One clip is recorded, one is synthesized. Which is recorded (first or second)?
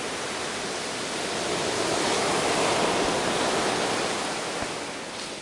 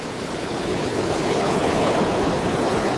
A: first